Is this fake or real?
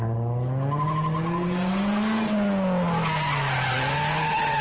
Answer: real